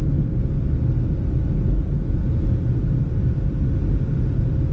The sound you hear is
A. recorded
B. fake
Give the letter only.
A